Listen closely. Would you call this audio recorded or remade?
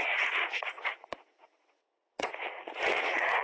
remade